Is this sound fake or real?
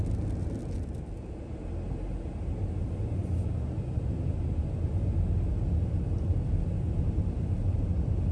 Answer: real